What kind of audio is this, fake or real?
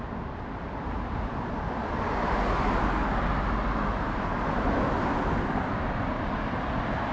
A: real